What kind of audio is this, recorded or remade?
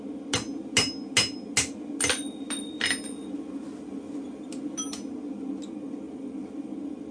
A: recorded